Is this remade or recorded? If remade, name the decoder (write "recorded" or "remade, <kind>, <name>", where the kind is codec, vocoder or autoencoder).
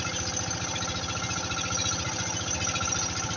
recorded